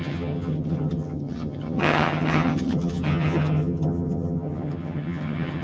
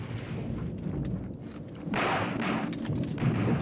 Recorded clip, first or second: second